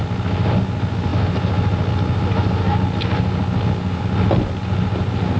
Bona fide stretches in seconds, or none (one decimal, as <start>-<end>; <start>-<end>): 0.0-5.4